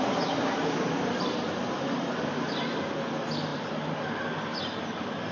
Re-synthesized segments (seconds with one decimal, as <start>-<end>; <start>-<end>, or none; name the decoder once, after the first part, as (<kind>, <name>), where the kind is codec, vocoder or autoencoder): 3.5-4.7 (vocoder, BigVGAN v2)